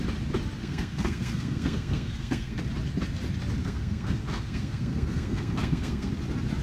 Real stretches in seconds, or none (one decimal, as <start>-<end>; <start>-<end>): 0.0-0.6; 2.6-3.6; 6.1-6.6